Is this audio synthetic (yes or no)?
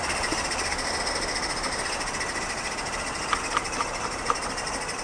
no